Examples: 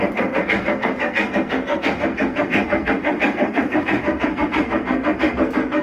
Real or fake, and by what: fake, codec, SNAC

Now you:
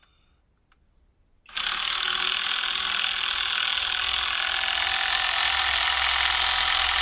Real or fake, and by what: real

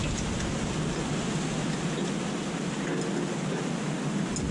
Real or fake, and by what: real